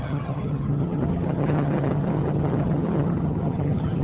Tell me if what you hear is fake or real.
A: fake